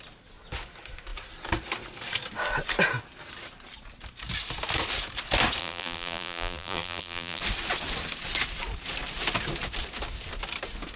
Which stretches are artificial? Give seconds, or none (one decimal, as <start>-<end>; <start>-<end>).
5.6-7.4